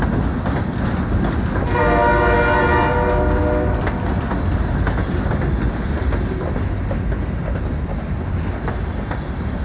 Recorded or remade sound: recorded